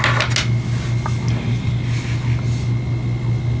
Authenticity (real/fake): real